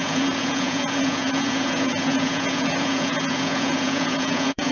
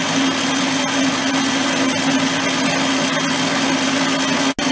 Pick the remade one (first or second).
first